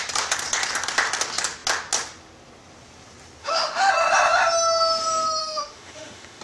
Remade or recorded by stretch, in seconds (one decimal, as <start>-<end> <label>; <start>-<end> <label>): 0.0-3.4 recorded; 3.4-3.9 remade; 3.9-5.4 recorded; 5.4-6.4 remade

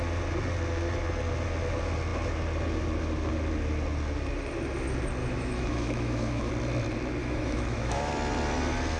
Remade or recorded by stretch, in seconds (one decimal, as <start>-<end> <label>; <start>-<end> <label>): 0.0-5.2 recorded; 5.2-6.5 remade; 6.5-7.2 recorded; 7.2-8.1 remade; 8.1-9.0 recorded

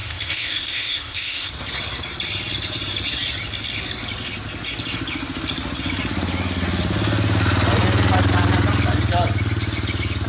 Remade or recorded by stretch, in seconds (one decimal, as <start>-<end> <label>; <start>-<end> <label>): 0.0-1.5 remade; 1.5-10.3 recorded

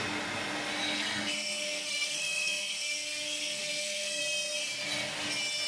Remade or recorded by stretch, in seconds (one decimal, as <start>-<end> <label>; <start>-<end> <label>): 0.0-0.8 recorded; 0.8-4.2 remade; 4.2-5.7 recorded

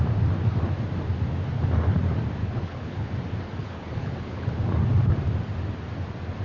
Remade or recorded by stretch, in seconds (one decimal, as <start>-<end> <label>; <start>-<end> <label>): 0.0-2.4 recorded; 2.4-3.1 remade; 3.1-3.6 recorded; 3.6-4.5 remade; 4.5-6.4 recorded